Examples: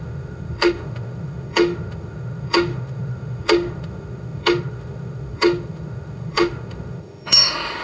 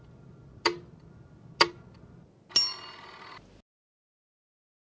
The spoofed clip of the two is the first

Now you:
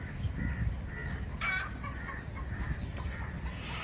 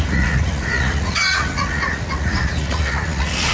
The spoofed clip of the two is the second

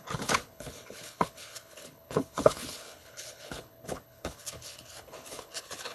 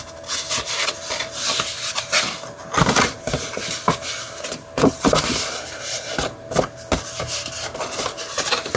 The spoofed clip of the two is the first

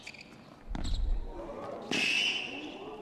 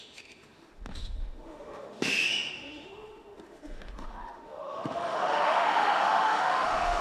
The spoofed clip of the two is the second